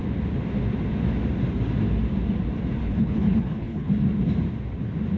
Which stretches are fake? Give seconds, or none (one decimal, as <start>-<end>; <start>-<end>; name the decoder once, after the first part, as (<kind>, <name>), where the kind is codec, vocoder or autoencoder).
2.8-3.9 (codec, HILCodec)